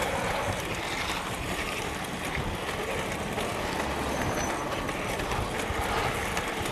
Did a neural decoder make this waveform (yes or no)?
no